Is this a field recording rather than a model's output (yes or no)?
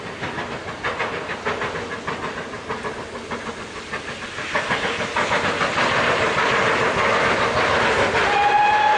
yes